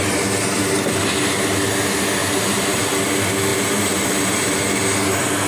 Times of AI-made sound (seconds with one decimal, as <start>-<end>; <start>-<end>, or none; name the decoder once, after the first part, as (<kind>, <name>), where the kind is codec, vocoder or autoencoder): 2.2-2.9 (vocoder, BigVGAN v2); 3.5-4.3